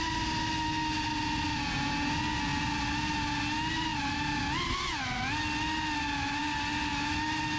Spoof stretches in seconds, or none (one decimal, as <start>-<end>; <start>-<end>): none